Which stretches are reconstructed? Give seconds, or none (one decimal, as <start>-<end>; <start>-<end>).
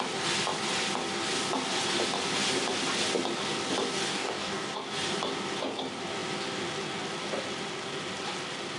4.1-4.7